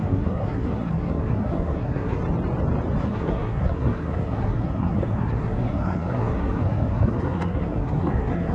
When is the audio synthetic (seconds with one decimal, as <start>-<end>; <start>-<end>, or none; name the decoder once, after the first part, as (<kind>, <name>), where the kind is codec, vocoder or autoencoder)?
0.0-2.2 (codec, SNAC); 3.0-8.5